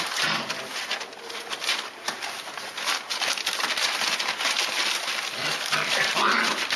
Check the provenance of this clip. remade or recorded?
recorded